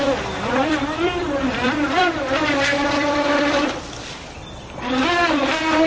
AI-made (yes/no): yes